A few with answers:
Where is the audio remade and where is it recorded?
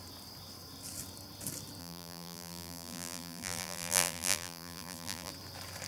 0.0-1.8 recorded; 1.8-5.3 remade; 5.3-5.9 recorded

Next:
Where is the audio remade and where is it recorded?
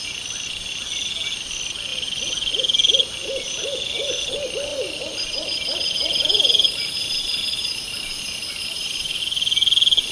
0.0-3.2 recorded; 3.2-4.2 remade; 4.2-4.7 recorded; 4.7-9.2 remade; 9.2-10.1 recorded